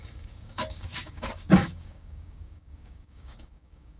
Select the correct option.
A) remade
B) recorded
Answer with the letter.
A